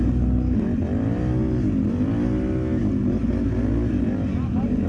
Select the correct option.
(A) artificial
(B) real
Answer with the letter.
B